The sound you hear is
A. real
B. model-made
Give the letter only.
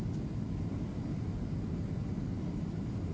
A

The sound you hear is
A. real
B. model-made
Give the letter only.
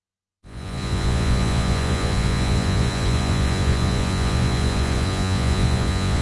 B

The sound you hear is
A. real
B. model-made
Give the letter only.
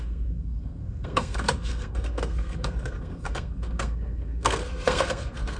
B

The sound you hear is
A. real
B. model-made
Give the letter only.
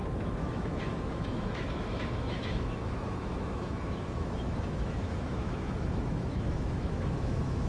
B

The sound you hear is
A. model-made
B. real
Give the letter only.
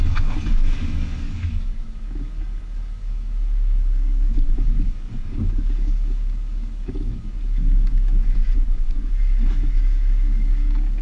A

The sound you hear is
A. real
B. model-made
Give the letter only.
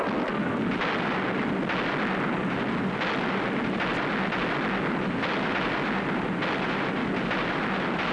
A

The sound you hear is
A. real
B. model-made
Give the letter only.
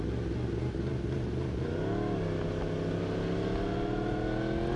A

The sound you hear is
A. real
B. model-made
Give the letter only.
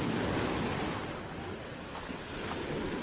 A